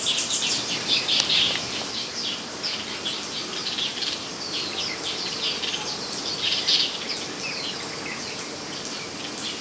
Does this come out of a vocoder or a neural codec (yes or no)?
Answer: no